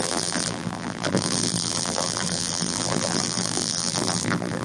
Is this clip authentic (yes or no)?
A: no